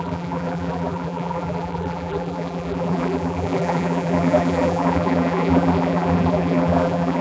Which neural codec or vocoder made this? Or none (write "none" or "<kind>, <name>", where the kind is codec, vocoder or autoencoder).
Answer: vocoder, BigVGAN v2